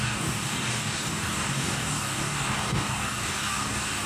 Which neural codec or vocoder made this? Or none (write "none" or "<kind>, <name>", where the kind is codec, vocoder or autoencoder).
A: codec, DAC